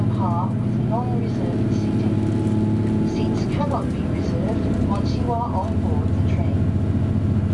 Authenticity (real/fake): real